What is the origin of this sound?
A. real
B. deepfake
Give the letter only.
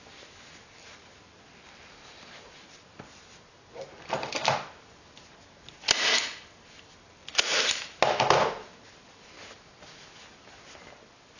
A